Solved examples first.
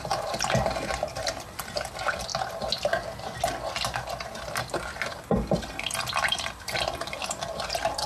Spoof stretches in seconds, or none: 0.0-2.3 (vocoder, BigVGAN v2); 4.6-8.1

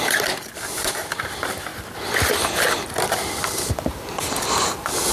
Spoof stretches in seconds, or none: 0.0-1.7 (vocoder, BigVGAN v2)

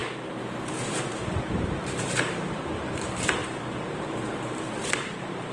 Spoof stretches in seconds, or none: 0.6-3.4 (vocoder, BigVGAN v2); 4.0-5.5

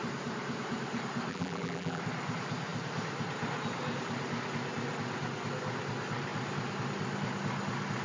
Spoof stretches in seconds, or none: 1.3-2.0 (vocoder, BigVGAN v2)

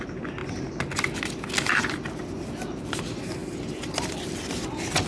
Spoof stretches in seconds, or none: 3.4-4.6 (vocoder, BigVGAN v2)

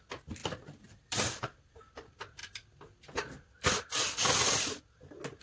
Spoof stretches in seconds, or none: 0.4-1.7 (vocoder, BigVGAN v2)

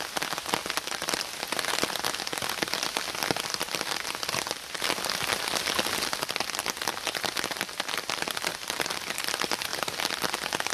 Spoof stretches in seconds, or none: 8.5-9.1 (vocoder, BigVGAN v2)

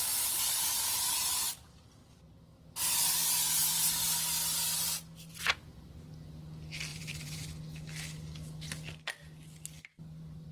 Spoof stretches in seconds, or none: 6.9-7.4 (vocoder, BigVGAN v2); 9.9-10.5